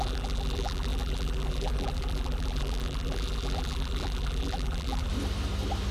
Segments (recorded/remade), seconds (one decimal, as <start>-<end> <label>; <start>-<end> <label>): 0.0-5.1 remade; 5.1-5.9 recorded